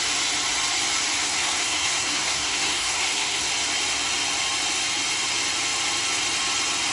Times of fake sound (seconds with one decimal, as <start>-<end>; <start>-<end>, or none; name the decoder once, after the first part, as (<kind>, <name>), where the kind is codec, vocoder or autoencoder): 1.2-3.5 (codec, SNAC)